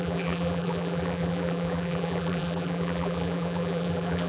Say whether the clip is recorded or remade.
remade